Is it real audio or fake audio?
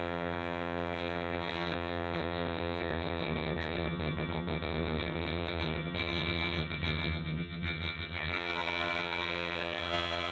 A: fake